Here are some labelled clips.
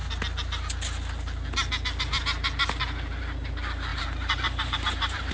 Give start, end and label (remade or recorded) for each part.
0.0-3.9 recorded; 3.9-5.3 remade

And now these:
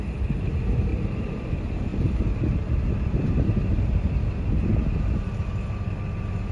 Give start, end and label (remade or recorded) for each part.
0.0-0.9 recorded; 0.9-1.5 remade; 1.5-1.9 recorded; 1.9-3.4 remade; 3.4-6.5 recorded

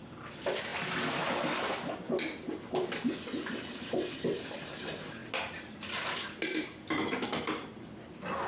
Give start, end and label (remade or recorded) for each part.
0.0-8.5 recorded

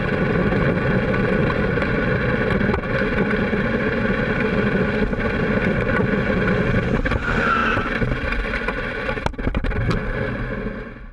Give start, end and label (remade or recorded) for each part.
0.0-1.4 recorded; 1.4-1.9 remade; 1.9-11.1 recorded